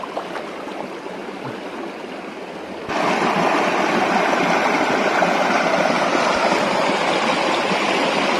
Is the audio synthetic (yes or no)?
no